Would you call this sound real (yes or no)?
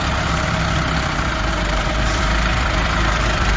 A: no